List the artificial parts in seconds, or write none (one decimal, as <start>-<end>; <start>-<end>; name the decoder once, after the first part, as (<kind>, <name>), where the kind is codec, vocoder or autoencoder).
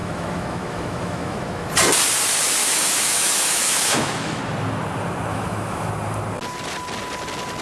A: 0.0-1.7 (autoencoder, DAC-VAE); 2.6-4.4; 5.3-5.9